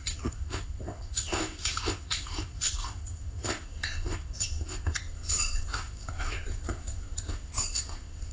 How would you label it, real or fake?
fake